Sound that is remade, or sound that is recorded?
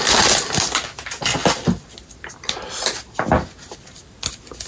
recorded